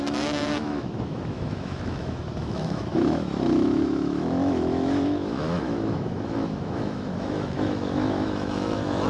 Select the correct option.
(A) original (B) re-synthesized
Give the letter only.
B